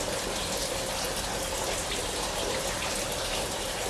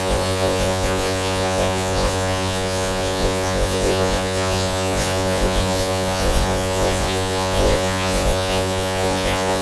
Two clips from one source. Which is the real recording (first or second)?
first